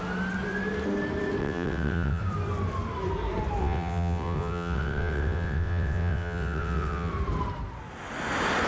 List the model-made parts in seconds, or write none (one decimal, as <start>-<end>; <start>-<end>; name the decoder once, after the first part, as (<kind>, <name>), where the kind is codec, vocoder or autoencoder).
1.4-2.2 (vocoder, WaveNeXt); 3.6-7.1